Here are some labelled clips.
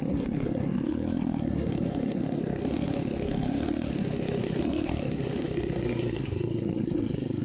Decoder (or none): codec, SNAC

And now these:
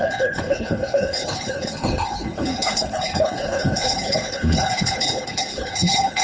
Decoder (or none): codec, HILCodec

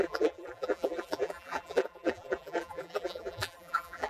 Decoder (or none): vocoder, BigVGAN v2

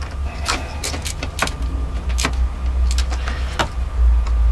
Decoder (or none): none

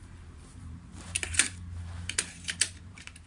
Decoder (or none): vocoder, BigVGAN v2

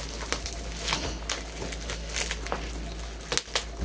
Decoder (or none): none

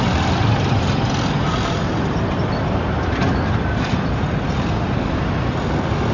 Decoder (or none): none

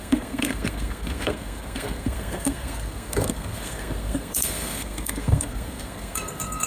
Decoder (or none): codec, SNAC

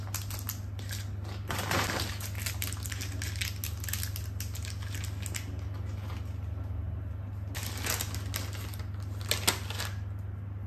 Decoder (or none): none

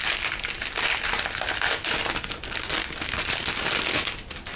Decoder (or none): none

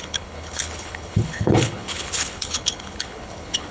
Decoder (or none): codec, HILCodec